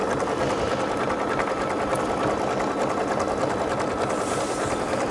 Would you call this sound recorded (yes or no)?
yes